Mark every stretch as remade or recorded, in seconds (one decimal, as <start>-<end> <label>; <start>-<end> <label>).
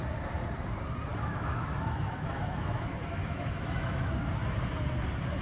0.0-1.1 recorded; 1.1-4.3 remade; 4.3-5.4 recorded